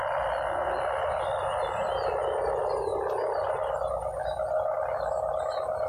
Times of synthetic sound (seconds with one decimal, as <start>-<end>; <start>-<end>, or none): none